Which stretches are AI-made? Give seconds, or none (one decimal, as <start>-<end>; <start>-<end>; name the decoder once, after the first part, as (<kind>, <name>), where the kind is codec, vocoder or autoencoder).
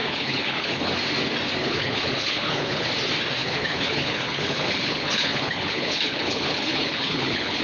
0.0-0.9 (codec, HILCodec); 1.6-2.9; 3.4-7.6